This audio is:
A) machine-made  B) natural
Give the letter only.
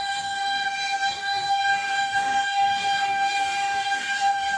A